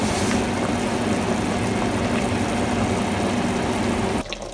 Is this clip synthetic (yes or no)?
no